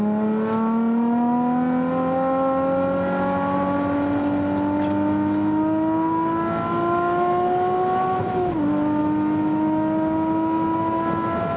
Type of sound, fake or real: real